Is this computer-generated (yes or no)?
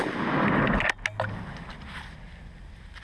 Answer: no